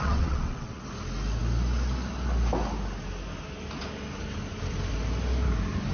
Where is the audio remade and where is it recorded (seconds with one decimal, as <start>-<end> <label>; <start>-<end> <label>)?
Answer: 0.0-0.8 remade; 0.8-5.9 recorded